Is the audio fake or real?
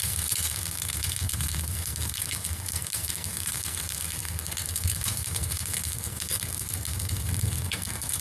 fake